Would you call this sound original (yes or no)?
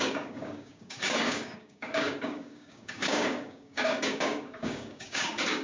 no